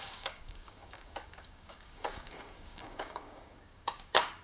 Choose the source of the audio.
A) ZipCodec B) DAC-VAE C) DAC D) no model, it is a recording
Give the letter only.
C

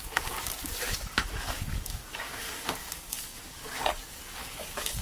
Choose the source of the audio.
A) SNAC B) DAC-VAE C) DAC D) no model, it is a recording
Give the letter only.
C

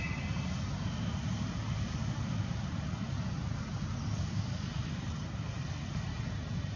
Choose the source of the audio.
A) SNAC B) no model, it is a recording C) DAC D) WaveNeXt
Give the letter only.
B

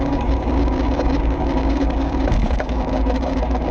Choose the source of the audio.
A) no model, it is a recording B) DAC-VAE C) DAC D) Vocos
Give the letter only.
C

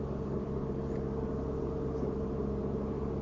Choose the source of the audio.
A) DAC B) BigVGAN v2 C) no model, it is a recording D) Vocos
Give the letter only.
C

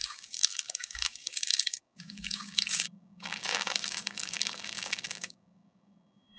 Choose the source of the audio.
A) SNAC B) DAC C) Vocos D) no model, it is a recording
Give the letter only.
B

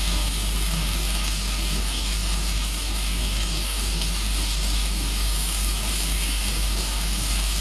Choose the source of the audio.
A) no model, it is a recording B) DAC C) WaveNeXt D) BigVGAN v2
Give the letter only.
B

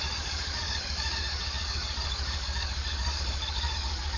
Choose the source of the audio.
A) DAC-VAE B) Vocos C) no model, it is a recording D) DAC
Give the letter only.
D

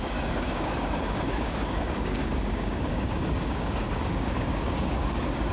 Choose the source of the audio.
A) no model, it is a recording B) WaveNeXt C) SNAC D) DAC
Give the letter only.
D